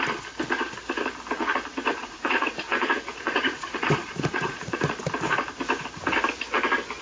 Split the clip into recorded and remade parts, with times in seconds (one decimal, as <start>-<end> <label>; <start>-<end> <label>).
0.0-1.9 recorded; 1.9-5.0 remade; 5.0-7.0 recorded